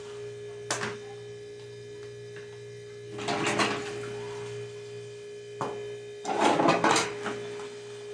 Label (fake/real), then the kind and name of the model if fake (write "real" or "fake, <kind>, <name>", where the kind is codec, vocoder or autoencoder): real